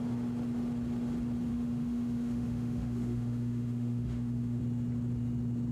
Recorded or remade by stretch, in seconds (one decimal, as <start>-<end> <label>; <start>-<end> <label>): 0.0-1.5 recorded; 1.5-4.6 remade; 4.6-5.7 recorded